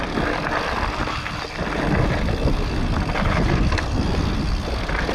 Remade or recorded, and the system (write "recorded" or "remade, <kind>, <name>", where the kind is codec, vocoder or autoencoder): recorded